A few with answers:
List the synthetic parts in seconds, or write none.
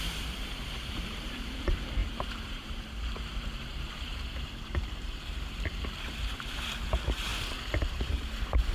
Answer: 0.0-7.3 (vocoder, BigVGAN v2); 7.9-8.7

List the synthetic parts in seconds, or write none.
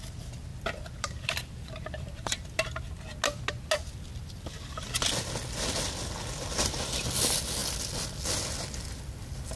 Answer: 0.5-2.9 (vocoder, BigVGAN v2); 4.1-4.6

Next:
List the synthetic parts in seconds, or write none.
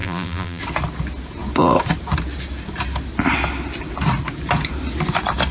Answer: 0.0-0.6 (vocoder, BigVGAN v2)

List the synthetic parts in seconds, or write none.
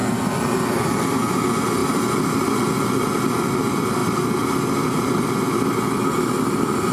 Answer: none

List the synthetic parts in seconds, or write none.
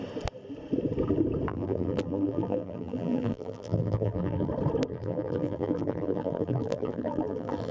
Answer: 1.5-4.5 (vocoder, BigVGAN v2); 4.9-7.7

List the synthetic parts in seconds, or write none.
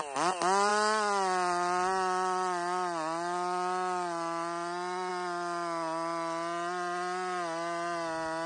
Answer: none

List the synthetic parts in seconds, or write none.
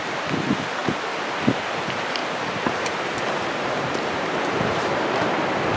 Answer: 2.2-4.4 (vocoder, BigVGAN v2)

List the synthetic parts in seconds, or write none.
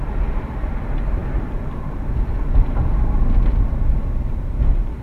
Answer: 0.0-5.0 (vocoder, BigVGAN v2)